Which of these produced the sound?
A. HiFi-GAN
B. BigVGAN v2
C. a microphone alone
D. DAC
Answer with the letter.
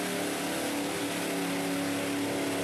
C